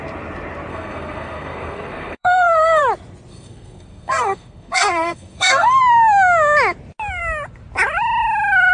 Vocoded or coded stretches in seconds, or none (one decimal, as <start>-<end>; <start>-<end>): 0.7-2.8; 3.3-5.8